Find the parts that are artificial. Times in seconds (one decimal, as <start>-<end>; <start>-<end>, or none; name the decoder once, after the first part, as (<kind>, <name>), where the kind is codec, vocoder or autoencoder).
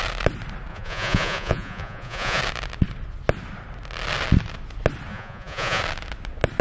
0.7-2.4 (vocoder, Vocos); 5.1-5.8